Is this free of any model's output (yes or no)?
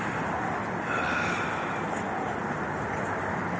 yes